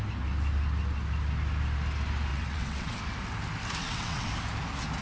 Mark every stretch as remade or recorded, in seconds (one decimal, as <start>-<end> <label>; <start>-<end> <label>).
0.0-2.3 recorded; 2.3-3.0 remade; 3.0-3.8 recorded; 3.8-4.3 remade; 4.3-5.0 recorded